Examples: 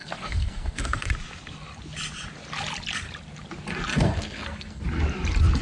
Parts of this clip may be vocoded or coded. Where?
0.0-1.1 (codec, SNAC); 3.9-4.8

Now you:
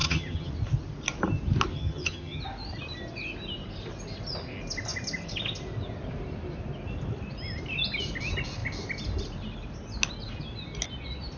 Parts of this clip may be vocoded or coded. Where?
0.0-0.5 (vocoder, HiFi-GAN); 1.7-2.4

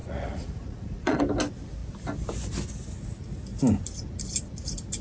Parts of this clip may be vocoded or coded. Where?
0.0-1.2 (vocoder, Vocos)

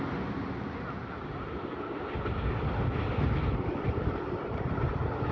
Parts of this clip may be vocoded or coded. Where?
none

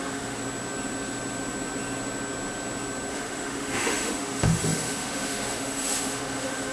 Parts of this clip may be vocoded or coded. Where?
0.0-0.4 (autoencoder, DAC-VAE); 3.1-6.7

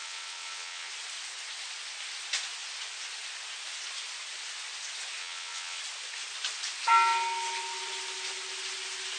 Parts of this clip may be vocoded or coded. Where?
0.0-0.9 (vocoder, WaveNeXt); 5.2-5.8

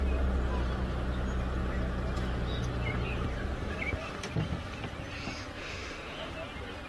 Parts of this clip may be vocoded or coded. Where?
5.6-6.3 (autoencoder, DAC-VAE)

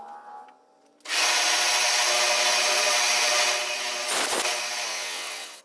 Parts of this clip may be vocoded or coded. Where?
4.9-5.6 (vocoder, WaveNeXt)